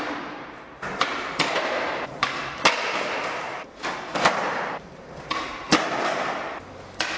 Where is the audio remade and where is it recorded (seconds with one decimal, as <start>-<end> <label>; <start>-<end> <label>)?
0.0-2.3 remade; 2.3-3.0 recorded; 3.0-3.5 remade; 3.5-4.0 recorded; 4.0-5.7 remade; 5.7-7.2 recorded